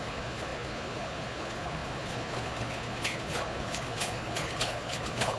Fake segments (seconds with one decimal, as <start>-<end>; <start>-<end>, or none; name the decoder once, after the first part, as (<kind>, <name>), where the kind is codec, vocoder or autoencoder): 0.0-5.4 (codec, HILCodec)